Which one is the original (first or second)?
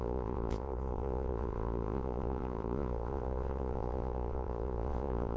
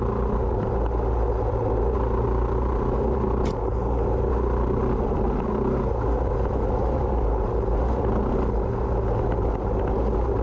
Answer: second